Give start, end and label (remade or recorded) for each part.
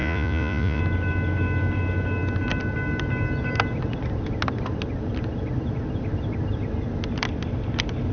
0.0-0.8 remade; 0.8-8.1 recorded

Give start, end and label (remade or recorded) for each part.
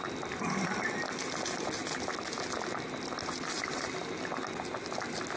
0.0-5.4 recorded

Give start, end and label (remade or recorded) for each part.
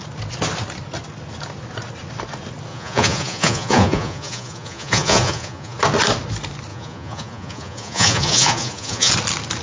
0.0-2.7 recorded; 2.7-5.8 remade; 5.8-6.7 recorded; 6.7-9.1 remade; 9.1-9.6 recorded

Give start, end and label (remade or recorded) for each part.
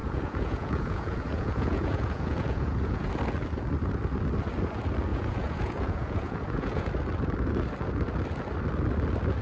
0.0-3.1 remade; 3.1-5.1 recorded; 5.1-6.9 remade; 6.9-9.4 recorded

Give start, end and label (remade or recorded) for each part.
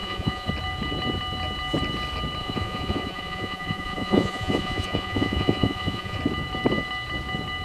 0.0-0.5 remade; 0.5-2.4 recorded; 2.4-6.2 remade; 6.2-7.6 recorded